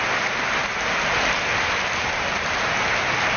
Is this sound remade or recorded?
recorded